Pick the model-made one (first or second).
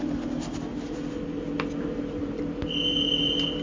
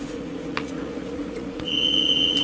second